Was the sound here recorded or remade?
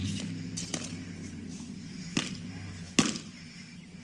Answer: recorded